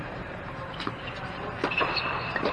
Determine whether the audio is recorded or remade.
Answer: remade